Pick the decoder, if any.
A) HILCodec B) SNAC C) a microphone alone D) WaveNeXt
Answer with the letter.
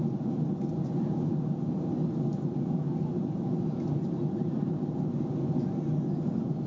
C